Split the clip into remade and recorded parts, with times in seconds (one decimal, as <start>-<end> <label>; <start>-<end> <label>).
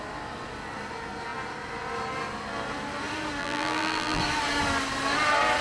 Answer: 0.0-3.4 recorded; 3.4-4.2 remade; 4.2-5.6 recorded